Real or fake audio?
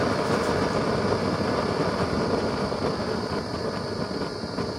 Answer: real